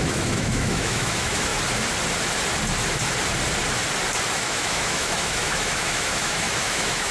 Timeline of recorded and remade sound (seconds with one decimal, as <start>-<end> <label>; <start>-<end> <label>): 0.0-1.5 remade; 1.5-4.3 recorded; 4.3-7.1 remade